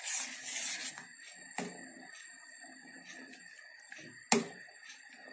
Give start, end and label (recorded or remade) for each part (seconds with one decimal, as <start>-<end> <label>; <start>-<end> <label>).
0.0-5.3 recorded